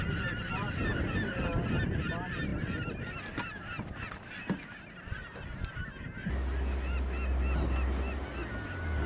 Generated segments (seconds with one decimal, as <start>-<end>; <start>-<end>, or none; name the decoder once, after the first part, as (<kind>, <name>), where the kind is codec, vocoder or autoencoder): none